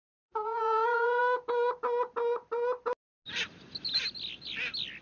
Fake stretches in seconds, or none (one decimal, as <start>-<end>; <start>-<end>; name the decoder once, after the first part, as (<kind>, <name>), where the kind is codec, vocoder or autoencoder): 0.0-1.2 (vocoder, Vocos)